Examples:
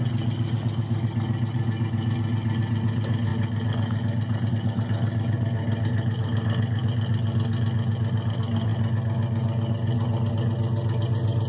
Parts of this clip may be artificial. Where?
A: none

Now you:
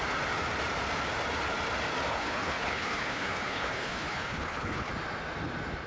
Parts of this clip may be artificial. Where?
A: 2.1-4.9 (codec, HILCodec)